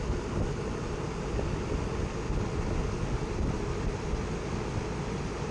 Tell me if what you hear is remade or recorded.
recorded